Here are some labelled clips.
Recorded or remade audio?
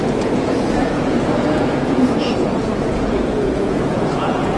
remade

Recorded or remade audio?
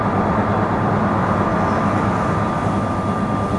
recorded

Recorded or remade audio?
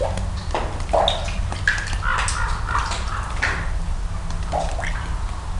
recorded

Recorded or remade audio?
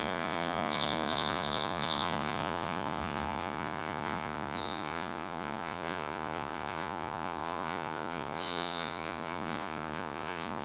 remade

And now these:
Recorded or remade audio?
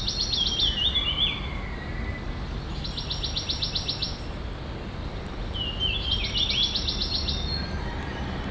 recorded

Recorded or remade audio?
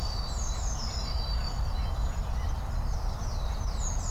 recorded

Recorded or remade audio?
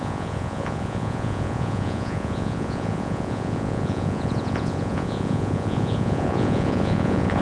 remade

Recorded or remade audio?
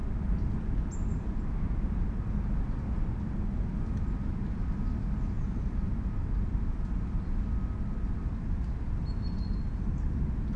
recorded